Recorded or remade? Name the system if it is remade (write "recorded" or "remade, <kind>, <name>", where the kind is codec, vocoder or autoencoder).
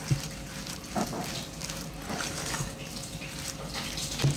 recorded